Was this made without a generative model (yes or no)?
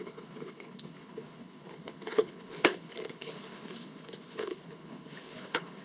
no